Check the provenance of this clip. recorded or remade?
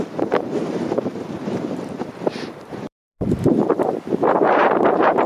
remade